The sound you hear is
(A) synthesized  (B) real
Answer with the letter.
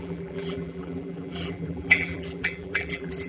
A